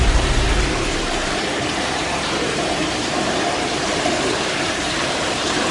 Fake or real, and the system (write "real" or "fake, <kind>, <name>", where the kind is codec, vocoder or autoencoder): fake, vocoder, BigVGAN v2